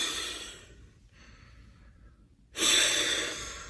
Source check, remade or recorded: recorded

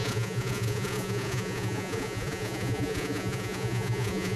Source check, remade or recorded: remade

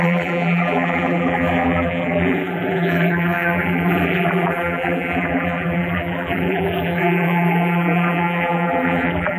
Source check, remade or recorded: remade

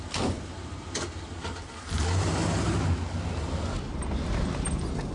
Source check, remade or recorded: recorded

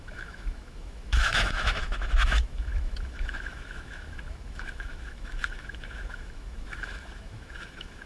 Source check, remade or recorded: remade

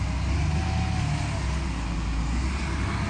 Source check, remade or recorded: recorded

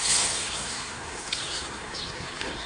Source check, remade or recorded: remade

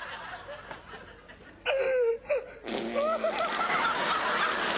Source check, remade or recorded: recorded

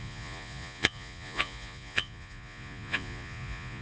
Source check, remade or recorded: remade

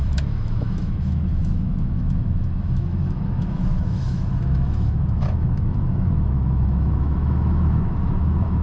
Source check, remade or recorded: remade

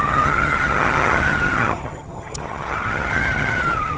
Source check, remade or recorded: remade